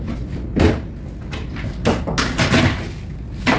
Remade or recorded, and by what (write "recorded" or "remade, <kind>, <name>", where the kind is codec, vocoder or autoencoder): recorded